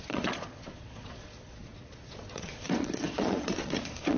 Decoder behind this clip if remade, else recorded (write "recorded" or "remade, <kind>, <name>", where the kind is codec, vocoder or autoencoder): remade, vocoder, Vocos